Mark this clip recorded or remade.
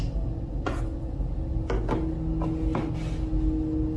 recorded